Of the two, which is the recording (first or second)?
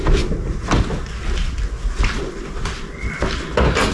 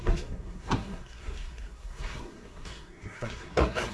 first